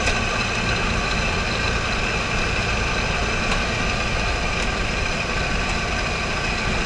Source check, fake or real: real